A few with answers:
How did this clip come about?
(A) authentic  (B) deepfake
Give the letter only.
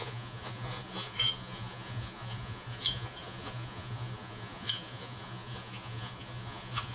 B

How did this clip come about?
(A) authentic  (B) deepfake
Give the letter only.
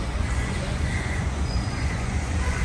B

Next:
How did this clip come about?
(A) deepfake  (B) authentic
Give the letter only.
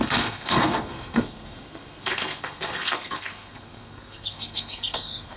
A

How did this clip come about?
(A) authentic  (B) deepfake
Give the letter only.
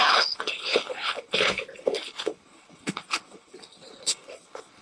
B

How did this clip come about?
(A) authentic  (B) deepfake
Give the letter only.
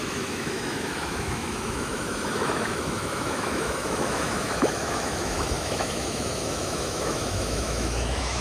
B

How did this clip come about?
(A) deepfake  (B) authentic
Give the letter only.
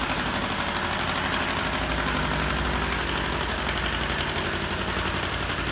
B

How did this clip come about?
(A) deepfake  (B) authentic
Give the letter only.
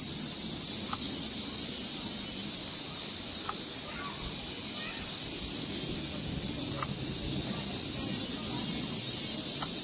B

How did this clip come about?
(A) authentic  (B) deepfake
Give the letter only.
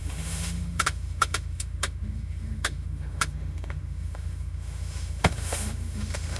B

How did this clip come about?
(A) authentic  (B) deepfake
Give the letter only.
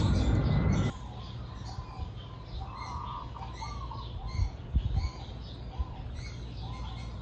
A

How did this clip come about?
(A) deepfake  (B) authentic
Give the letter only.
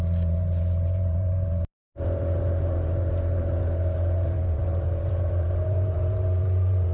A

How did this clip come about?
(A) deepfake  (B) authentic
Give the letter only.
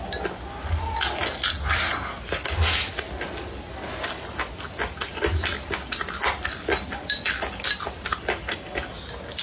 B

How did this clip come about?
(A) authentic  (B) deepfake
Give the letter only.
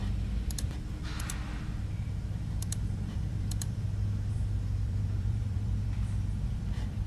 B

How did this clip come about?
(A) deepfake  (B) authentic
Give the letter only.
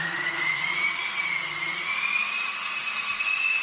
A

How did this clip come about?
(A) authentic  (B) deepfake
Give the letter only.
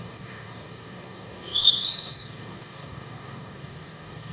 B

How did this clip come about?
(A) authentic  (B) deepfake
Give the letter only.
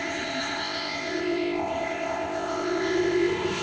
B